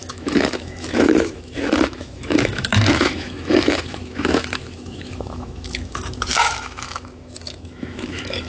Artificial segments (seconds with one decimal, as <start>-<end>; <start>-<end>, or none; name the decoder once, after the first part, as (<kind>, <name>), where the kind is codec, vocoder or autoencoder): 0.0-8.5 (autoencoder, DAC-VAE)